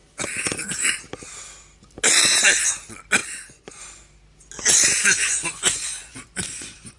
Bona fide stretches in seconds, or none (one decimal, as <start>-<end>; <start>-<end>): 0.0-3.2; 3.8-4.9